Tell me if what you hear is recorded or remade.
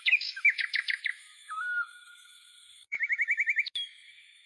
remade